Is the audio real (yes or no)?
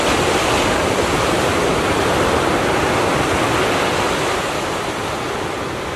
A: yes